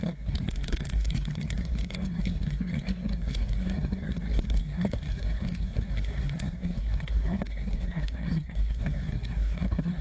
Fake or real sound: fake